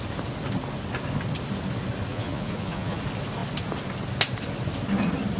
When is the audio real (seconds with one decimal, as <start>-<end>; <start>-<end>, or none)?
0.0-2.1; 3.0-5.4